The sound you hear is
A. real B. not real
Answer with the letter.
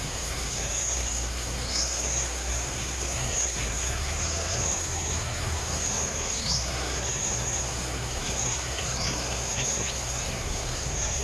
B